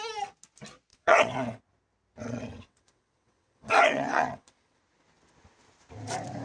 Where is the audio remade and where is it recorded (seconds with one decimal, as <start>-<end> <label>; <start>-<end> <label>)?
0.0-0.9 recorded; 0.9-1.6 remade; 1.6-2.2 recorded; 2.2-4.8 remade; 4.8-6.4 recorded